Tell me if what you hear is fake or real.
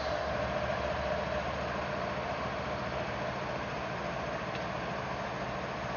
real